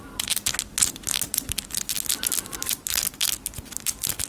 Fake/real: real